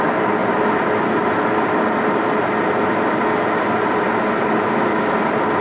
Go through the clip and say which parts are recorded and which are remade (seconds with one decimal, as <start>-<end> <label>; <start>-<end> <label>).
0.0-5.6 recorded